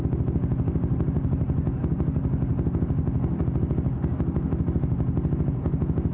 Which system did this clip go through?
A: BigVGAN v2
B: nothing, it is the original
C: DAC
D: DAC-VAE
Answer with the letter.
B